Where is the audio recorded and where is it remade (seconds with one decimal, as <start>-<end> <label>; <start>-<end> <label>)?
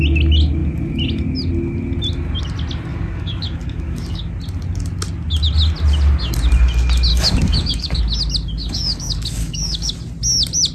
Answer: 0.0-2.9 recorded; 2.9-4.2 remade; 4.2-7.1 recorded; 7.1-8.0 remade; 8.0-8.6 recorded; 8.6-9.9 remade; 9.9-10.7 recorded